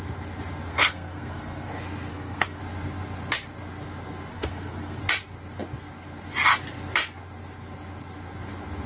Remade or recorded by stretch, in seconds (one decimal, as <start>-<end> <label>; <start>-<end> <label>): 0.0-0.7 recorded; 0.7-1.7 remade; 1.7-2.1 recorded; 2.1-2.6 remade; 2.6-4.3 recorded; 4.3-5.0 remade; 5.0-8.9 recorded

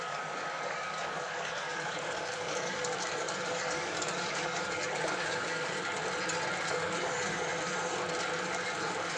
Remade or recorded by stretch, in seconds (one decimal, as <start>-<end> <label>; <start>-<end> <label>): 0.0-6.0 remade; 6.0-6.6 recorded; 6.6-7.5 remade; 7.5-8.4 recorded; 8.4-9.2 remade

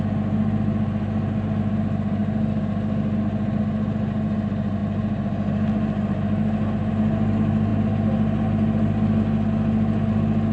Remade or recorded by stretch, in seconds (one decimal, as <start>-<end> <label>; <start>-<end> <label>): 0.0-10.5 recorded

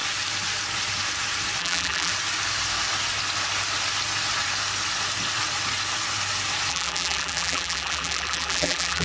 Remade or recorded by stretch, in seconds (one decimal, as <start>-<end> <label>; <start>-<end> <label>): 0.0-1.6 recorded; 1.6-2.1 remade; 2.1-6.7 recorded; 6.7-9.0 remade

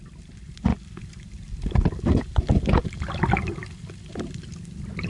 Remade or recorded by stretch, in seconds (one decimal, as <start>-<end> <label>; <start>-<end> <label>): 0.0-5.1 recorded

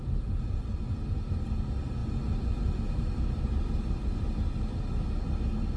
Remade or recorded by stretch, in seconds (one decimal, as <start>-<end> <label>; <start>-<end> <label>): 0.0-5.8 recorded